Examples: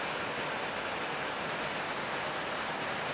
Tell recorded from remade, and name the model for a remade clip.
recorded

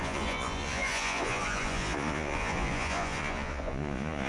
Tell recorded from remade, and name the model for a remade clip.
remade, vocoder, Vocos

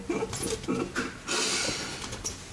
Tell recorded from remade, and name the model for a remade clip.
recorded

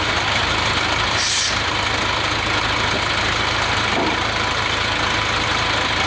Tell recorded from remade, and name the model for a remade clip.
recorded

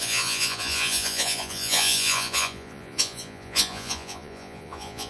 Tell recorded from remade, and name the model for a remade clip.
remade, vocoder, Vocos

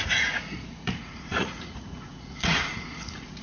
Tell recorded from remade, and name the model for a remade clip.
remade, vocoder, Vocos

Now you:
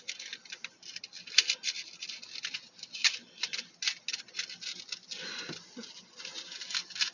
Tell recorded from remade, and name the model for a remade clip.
recorded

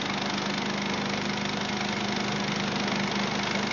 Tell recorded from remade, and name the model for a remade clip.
recorded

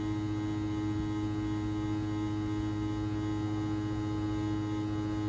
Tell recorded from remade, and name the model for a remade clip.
recorded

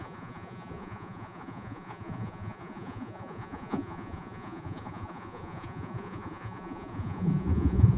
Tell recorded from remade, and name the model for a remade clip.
remade, vocoder, Vocos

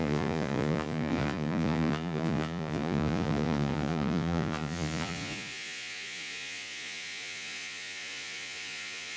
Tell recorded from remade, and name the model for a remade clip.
remade, vocoder, Vocos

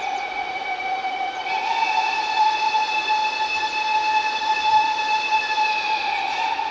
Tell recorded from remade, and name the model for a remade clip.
remade, vocoder, Vocos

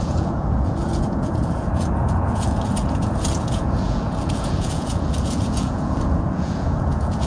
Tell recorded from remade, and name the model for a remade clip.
remade, vocoder, Vocos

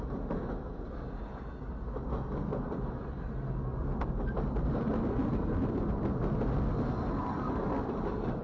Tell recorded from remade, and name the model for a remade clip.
recorded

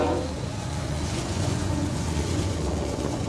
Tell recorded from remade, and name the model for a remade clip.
remade, vocoder, Vocos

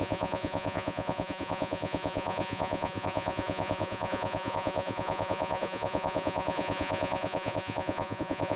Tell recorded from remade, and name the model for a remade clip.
remade, vocoder, Vocos